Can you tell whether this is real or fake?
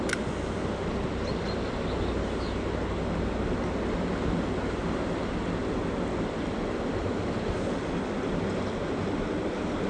real